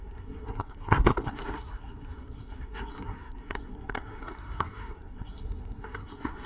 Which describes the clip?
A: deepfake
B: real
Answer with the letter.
A